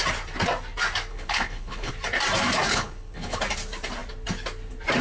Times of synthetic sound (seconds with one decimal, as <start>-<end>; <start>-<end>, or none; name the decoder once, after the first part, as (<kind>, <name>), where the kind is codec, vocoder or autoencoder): 1.1-1.9 (codec, HILCodec); 2.7-3.4